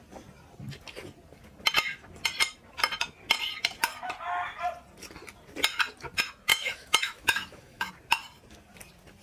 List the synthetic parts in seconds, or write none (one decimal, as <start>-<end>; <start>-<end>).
6.5-7.9